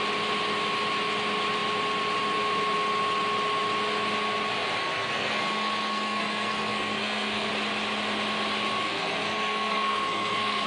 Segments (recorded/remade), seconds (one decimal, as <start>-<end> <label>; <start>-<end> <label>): 0.0-4.8 recorded; 4.8-7.5 remade; 7.5-8.8 recorded; 8.8-10.7 remade